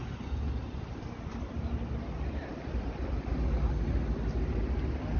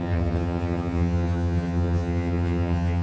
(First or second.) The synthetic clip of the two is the second